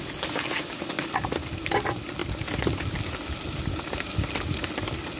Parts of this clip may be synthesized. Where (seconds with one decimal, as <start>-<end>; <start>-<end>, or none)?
none